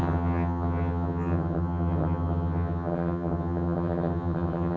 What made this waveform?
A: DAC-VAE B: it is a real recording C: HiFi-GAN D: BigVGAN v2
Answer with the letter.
C